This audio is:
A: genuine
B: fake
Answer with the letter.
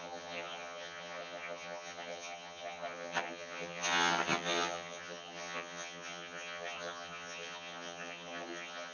B